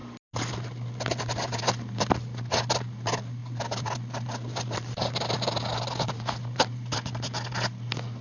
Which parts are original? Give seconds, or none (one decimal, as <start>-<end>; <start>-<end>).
0.0-8.2